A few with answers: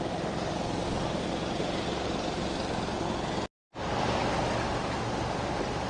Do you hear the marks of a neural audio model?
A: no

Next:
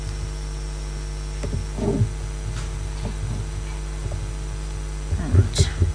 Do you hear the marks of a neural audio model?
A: no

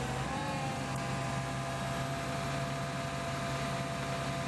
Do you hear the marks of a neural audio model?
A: no